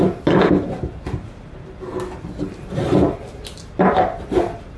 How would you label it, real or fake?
real